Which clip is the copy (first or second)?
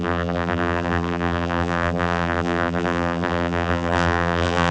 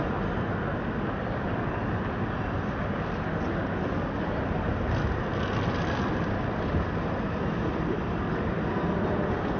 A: first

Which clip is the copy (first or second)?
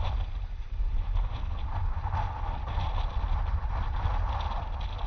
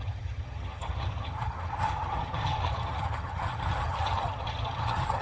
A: second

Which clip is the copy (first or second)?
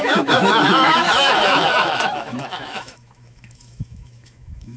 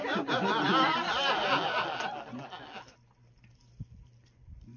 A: first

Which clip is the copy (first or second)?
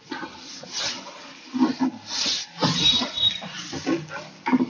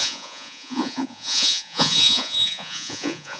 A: second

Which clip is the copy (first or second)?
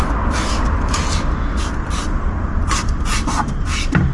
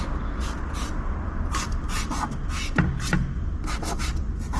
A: first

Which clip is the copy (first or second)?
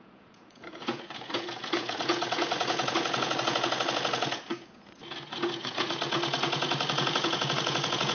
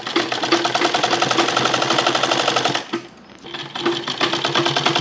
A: first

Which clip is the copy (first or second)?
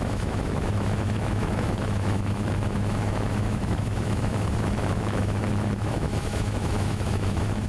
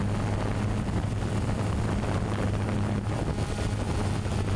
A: first